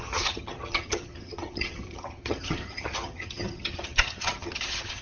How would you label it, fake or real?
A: fake